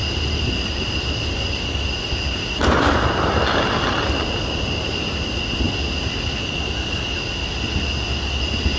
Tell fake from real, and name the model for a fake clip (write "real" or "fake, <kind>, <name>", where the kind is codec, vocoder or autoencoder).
real